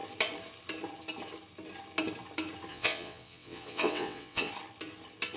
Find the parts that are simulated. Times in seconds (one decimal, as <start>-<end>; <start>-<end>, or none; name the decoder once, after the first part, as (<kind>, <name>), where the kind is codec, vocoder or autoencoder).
2.7-4.5 (vocoder, WaveNeXt)